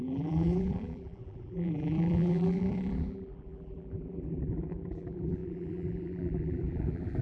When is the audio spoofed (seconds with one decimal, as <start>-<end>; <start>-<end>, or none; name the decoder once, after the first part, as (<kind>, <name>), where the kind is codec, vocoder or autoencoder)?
0.0-7.2 (vocoder, BigVGAN v2)